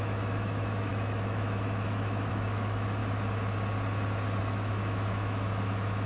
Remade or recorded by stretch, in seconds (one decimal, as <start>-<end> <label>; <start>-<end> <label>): 0.0-3.0 remade; 3.0-4.4 recorded; 4.4-6.1 remade

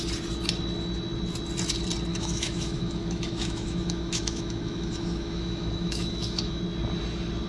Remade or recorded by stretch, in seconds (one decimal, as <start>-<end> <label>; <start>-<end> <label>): 0.0-2.1 recorded; 2.1-6.6 remade; 6.6-7.5 recorded

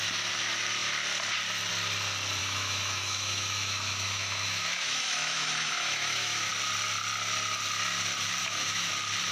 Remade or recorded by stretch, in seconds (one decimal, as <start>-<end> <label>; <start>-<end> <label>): 0.0-2.4 recorded; 2.4-6.5 remade; 6.5-8.4 recorded; 8.4-8.9 remade; 8.9-9.3 recorded

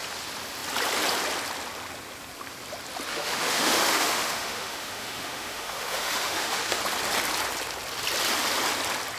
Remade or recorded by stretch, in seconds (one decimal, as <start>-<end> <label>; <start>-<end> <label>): 0.0-3.1 recorded; 3.1-6.8 remade; 6.8-9.2 recorded

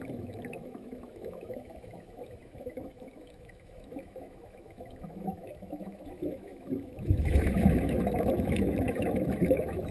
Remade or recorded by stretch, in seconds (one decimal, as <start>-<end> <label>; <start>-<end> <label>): 0.0-9.9 remade

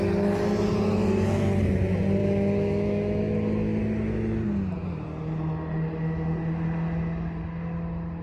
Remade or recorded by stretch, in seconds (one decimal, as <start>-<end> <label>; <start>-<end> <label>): 0.0-2.2 recorded; 2.2-3.2 remade; 3.2-8.2 recorded

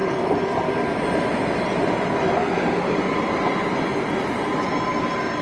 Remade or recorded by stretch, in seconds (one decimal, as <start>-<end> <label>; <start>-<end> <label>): 0.0-5.4 recorded

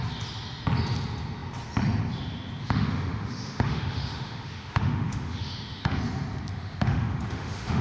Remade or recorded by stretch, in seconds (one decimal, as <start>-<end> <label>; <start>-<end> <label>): 0.0-2.6 recorded; 2.6-6.0 remade; 6.0-6.5 recorded; 6.5-7.8 remade